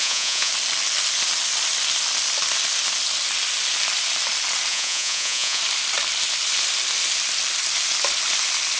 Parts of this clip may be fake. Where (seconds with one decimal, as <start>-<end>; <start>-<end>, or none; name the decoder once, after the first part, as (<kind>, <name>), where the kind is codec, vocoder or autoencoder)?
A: 0.0-0.5 (vocoder, Vocos); 4.7-5.6